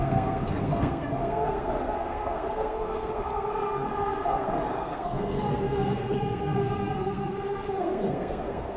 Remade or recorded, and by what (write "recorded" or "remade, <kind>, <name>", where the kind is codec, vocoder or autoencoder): remade, codec, SNAC